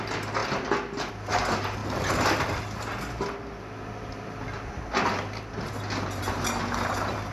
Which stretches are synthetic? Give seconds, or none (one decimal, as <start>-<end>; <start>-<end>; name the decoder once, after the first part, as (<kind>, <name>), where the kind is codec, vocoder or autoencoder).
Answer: none